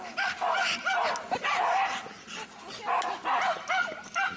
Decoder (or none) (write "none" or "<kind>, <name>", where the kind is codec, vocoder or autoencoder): none